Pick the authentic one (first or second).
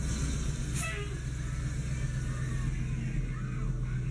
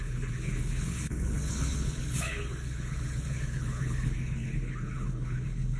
first